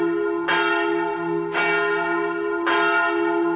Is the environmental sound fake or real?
real